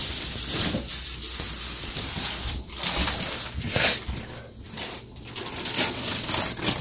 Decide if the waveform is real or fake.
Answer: real